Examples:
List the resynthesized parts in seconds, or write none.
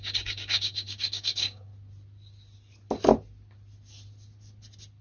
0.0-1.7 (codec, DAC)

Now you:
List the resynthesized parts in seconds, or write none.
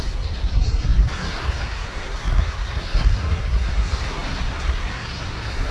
0.0-5.7 (codec, SNAC)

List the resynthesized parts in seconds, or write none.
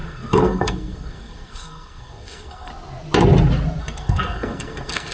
0.0-2.7 (codec, SNAC); 3.8-5.1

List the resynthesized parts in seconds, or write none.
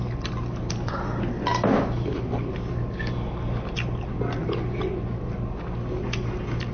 none